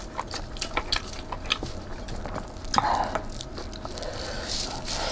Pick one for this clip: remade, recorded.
recorded